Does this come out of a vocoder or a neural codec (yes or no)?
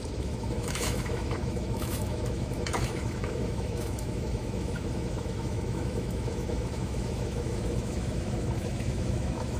yes